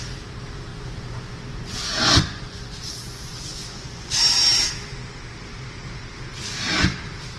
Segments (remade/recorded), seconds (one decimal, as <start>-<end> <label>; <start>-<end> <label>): 0.0-0.7 recorded; 0.7-4.1 remade; 4.1-7.4 recorded

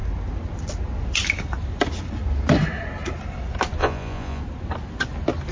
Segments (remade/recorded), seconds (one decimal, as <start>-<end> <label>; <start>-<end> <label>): 0.0-3.8 recorded; 3.8-4.4 remade; 4.4-5.5 recorded

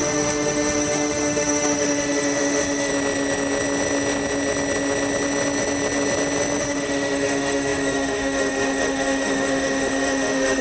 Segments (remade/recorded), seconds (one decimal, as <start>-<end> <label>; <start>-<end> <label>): 0.0-2.9 remade; 2.9-6.6 recorded; 6.6-10.6 remade

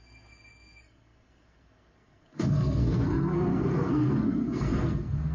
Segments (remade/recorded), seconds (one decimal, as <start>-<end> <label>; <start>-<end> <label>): 0.0-5.3 remade

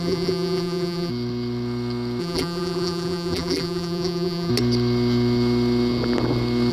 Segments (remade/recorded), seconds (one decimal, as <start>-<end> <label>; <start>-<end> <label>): 0.0-1.1 remade; 1.1-2.2 recorded; 2.2-4.5 remade; 4.5-6.7 recorded

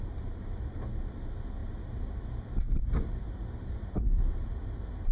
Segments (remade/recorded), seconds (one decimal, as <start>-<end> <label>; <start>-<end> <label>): 0.0-1.6 recorded; 1.6-5.1 remade